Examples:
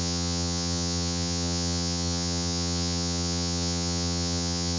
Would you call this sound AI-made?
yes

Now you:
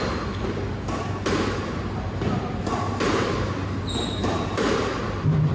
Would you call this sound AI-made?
no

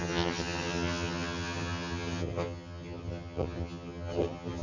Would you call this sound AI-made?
yes